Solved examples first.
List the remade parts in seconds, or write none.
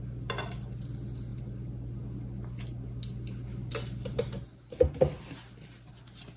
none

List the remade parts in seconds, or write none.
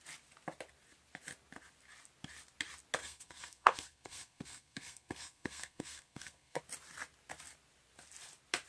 3.0-6.6 (codec, SNAC)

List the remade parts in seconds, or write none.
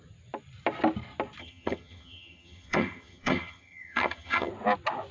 1.4-4.5 (vocoder, HiFi-GAN)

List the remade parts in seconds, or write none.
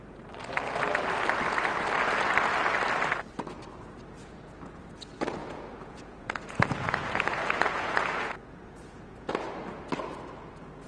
4.2-4.8 (vocoder, Vocos); 5.4-9.3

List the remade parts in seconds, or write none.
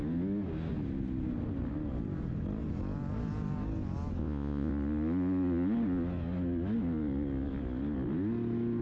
4.2-4.7 (vocoder, Vocos)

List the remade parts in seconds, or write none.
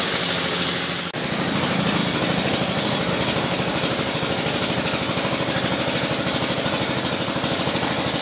none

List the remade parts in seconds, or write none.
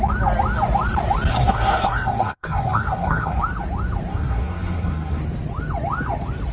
1.3-3.4 (codec, SNAC); 4.1-5.2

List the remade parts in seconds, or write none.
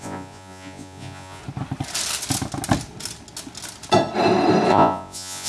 0.0-1.4 (vocoder, Vocos); 4.7-5.5